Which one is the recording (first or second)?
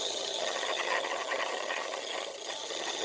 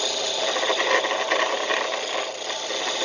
second